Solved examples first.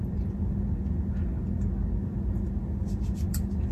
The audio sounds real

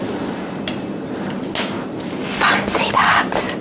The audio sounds real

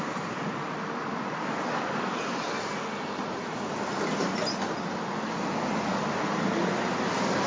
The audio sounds real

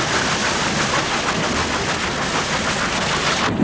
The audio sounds real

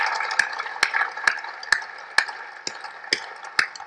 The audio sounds real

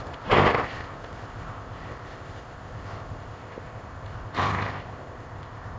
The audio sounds fake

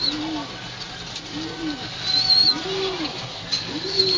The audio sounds real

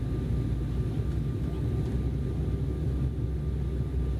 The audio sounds real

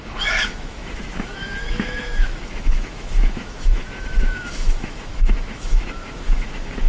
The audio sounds fake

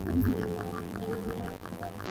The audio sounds fake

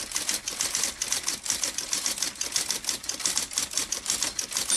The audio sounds real